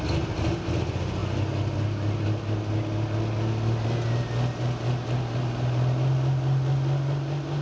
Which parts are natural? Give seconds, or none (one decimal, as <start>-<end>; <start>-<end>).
0.0-7.6